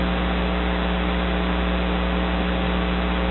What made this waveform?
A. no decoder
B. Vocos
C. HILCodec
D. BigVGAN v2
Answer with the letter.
A